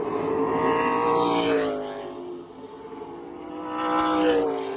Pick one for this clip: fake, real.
real